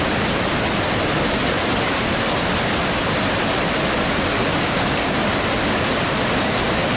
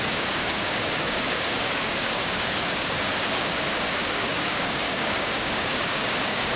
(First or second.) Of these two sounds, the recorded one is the first